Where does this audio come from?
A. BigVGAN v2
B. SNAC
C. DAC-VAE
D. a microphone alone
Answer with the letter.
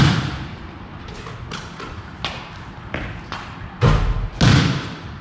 D